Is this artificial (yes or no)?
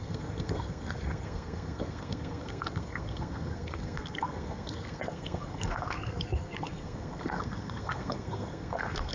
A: yes